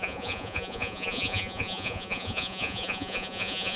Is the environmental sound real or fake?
fake